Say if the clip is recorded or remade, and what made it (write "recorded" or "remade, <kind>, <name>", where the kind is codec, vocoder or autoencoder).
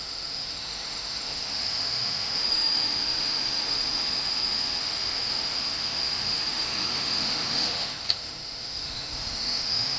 remade, autoencoder, DAC-VAE